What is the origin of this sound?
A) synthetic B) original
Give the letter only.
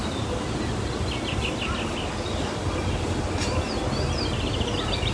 B